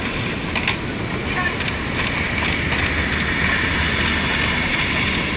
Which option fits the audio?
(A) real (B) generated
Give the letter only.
A